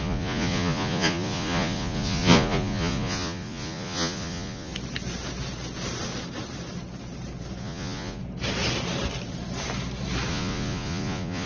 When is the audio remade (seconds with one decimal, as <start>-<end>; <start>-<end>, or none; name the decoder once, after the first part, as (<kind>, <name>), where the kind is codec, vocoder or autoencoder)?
0.0-4.7 (vocoder, Vocos); 7.6-8.2; 10.3-11.5